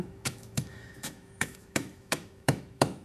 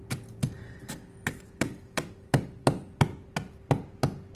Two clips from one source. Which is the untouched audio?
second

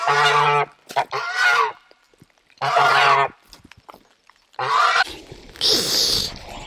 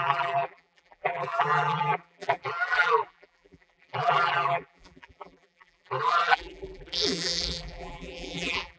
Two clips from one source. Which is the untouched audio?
first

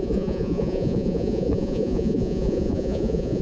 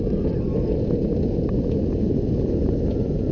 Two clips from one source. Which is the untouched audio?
second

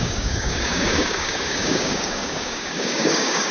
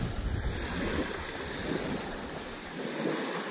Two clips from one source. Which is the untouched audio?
second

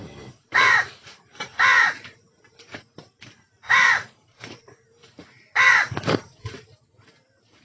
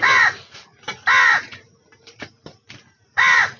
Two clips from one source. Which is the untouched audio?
second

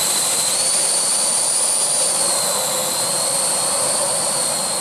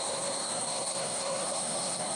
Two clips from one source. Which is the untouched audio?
first